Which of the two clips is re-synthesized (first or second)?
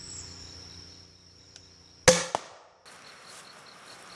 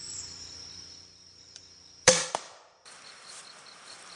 second